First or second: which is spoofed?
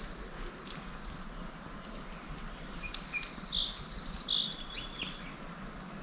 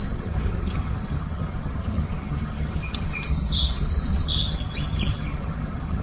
second